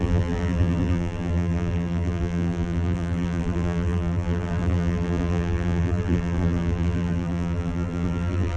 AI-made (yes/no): yes